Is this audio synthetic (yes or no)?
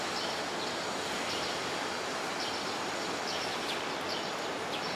no